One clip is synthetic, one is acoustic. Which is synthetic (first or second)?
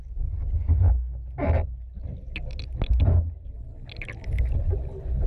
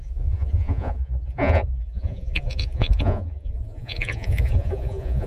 second